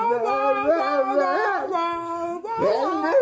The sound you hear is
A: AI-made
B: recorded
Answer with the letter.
B